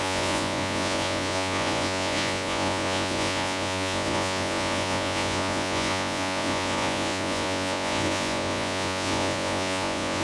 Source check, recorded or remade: remade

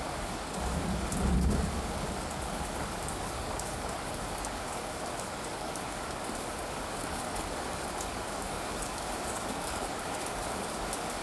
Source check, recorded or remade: remade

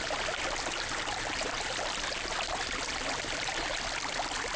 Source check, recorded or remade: recorded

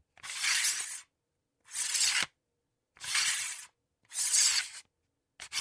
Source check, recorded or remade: recorded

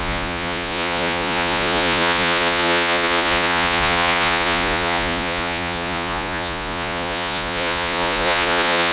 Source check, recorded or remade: remade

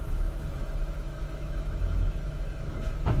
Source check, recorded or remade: remade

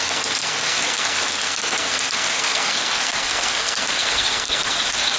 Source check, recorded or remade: remade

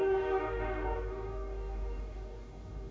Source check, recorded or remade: remade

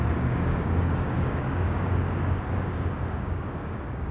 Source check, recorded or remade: remade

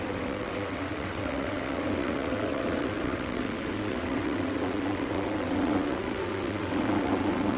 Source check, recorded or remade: remade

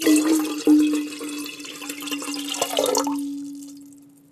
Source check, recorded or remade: recorded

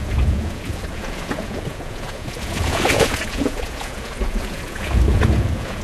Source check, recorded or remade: remade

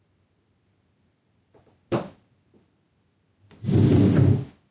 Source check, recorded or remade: recorded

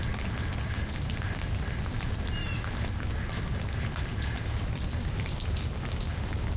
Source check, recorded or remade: recorded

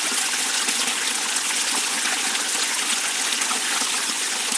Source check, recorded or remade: remade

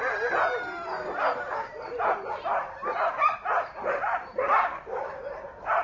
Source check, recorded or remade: recorded